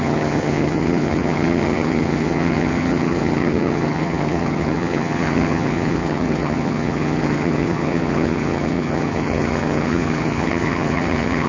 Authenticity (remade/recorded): remade